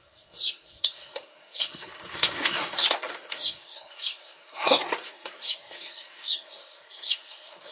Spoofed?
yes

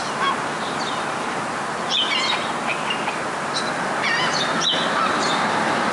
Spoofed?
no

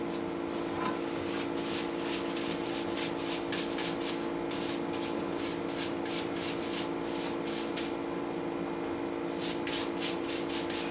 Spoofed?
no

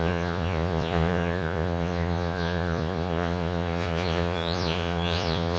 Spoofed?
yes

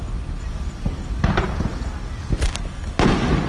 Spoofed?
no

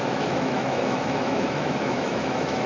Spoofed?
yes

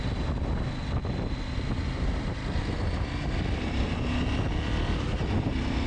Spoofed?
no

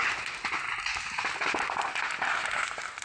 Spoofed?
no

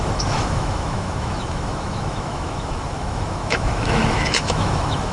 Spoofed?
yes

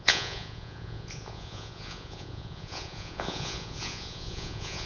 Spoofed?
yes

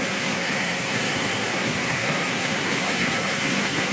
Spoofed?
yes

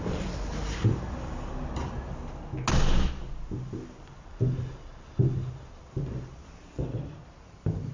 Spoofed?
no